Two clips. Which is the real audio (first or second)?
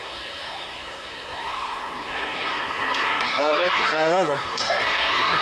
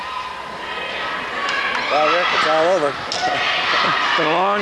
second